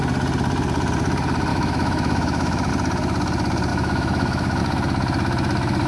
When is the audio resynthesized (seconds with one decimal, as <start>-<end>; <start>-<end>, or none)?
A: 1.5-2.7; 3.7-4.6